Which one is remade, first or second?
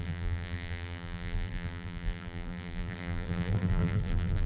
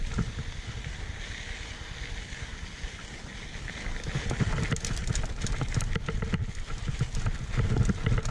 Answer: first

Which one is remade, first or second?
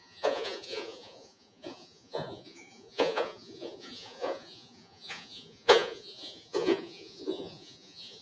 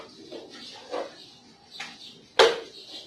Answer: first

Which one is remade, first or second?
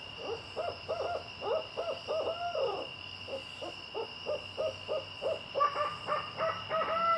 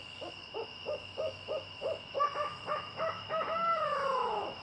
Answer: second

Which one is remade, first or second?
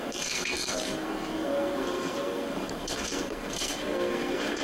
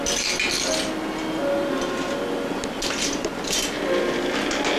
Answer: first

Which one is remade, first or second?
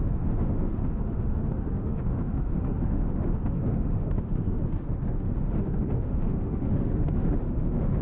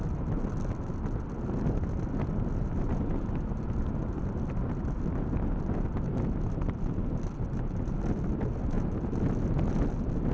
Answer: first